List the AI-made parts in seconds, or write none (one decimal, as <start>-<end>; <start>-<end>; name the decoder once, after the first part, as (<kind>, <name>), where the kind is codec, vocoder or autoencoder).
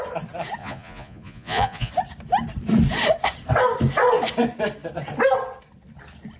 0.6-1.9 (vocoder, Vocos)